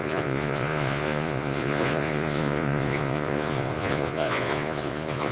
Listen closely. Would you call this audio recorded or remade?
remade